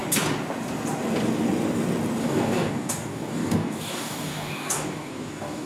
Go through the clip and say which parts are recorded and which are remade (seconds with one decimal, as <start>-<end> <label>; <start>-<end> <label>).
0.0-2.2 recorded; 2.2-5.7 remade